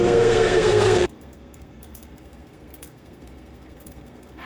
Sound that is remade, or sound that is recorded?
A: remade